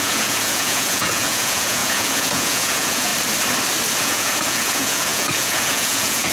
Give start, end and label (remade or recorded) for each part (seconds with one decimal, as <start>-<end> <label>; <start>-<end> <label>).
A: 0.0-3.1 remade; 3.1-4.0 recorded; 4.0-6.3 remade